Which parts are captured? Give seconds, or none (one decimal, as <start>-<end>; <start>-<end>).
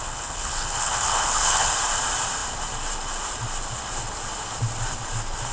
1.7-5.5